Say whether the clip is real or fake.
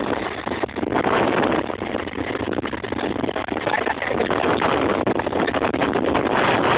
real